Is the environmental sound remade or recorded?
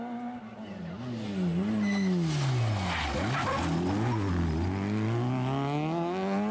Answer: recorded